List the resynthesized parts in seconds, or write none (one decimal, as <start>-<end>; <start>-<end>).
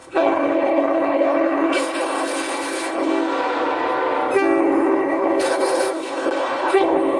0.0-3.1; 4.6-7.2